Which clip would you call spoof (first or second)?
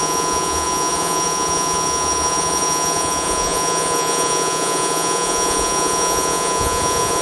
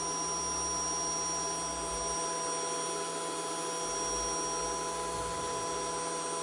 first